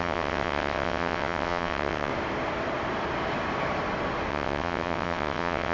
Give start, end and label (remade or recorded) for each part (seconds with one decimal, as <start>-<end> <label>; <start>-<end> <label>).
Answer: 0.0-2.1 remade; 2.1-4.3 recorded; 4.3-5.7 remade